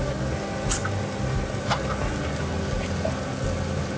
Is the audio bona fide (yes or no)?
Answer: yes